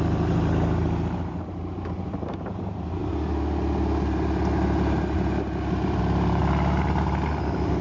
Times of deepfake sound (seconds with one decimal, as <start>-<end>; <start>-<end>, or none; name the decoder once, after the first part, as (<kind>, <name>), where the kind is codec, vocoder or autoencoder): 0.0-3.0 (vocoder, BigVGAN v2); 6.0-6.4